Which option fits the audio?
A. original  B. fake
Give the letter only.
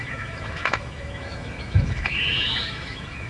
B